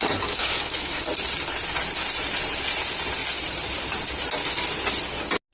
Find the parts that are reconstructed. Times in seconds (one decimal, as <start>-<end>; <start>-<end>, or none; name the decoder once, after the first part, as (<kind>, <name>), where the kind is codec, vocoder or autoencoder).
0.4-1.0 (autoencoder, DAC-VAE)